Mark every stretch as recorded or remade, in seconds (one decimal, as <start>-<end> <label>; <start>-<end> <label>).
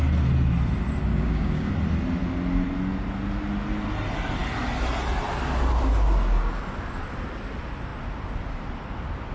0.0-1.1 recorded; 1.1-1.7 remade; 1.7-9.3 recorded